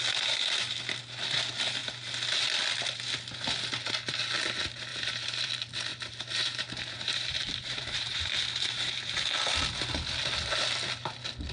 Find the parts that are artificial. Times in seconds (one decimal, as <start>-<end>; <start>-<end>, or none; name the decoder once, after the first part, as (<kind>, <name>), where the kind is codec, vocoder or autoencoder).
4.9-5.5 (vocoder, BigVGAN v2); 5.9-9.2